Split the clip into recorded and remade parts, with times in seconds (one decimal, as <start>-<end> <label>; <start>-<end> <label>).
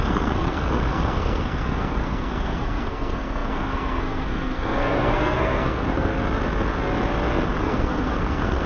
0.0-6.1 remade; 6.1-7.6 recorded; 7.6-8.7 remade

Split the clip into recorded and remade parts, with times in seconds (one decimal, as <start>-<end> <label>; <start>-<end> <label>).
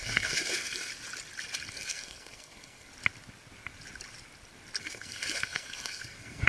0.0-0.9 remade; 0.9-1.7 recorded; 1.7-2.9 remade; 2.9-4.8 recorded; 4.8-6.5 remade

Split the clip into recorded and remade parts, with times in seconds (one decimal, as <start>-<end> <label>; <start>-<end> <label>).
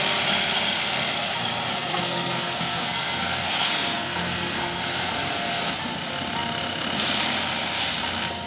0.0-1.7 recorded; 1.7-5.7 remade; 5.7-8.5 recorded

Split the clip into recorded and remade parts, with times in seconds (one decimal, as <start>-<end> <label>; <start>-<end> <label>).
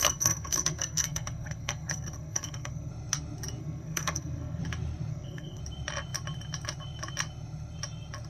0.0-2.9 remade; 2.9-3.6 recorded; 3.6-4.6 remade; 4.6-5.1 recorded; 5.1-5.6 remade; 5.6-8.3 recorded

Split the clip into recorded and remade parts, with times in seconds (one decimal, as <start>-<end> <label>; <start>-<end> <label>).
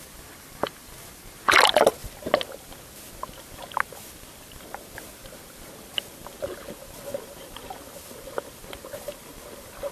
0.0-9.9 recorded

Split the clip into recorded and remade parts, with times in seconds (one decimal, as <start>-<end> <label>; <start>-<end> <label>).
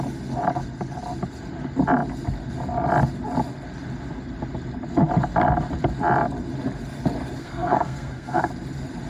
0.0-7.4 recorded; 7.4-8.5 remade; 8.5-9.1 recorded